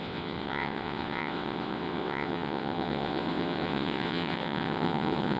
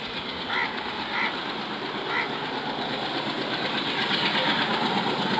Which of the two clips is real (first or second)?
second